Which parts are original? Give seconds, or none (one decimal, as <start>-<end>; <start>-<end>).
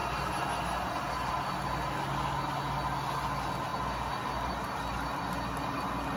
0.0-6.2